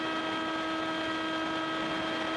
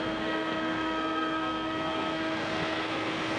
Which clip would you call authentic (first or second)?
first